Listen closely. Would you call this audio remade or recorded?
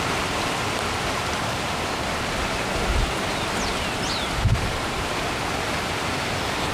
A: remade